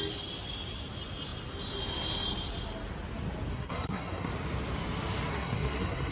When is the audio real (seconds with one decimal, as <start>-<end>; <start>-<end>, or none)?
0.0-3.5; 4.3-5.3